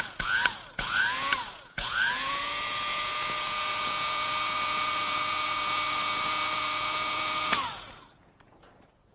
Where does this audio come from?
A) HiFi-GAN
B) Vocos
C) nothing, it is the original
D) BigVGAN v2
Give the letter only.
B